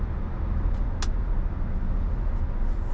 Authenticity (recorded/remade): recorded